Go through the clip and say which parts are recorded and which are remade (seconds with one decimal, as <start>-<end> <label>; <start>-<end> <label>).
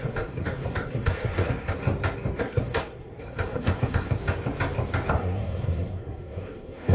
0.0-1.8 remade; 1.8-2.4 recorded; 2.4-4.2 remade; 4.2-5.1 recorded; 5.1-6.9 remade